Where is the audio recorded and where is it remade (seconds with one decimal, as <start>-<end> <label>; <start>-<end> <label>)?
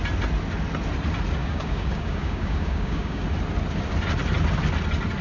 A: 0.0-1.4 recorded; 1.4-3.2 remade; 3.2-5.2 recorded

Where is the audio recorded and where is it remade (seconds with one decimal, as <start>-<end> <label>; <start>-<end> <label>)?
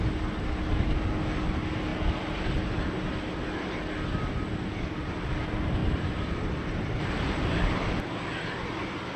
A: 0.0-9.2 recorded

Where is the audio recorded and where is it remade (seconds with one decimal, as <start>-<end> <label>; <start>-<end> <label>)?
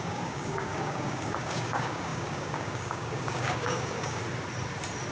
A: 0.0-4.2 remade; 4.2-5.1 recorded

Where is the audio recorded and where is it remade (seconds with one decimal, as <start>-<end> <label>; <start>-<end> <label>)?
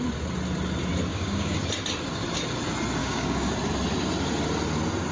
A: 0.0-1.1 recorded; 1.1-1.6 remade; 1.6-3.0 recorded; 3.0-3.5 remade; 3.5-5.1 recorded